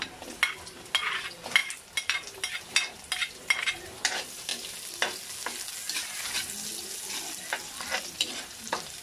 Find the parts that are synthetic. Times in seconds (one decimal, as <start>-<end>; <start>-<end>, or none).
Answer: 0.0-4.5; 8.0-9.0